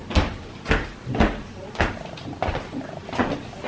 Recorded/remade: recorded